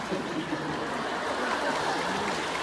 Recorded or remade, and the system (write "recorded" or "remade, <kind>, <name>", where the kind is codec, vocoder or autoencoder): recorded